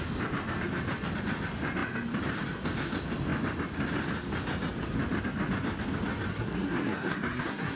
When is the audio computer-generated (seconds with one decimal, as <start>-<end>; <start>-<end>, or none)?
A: 6.3-7.8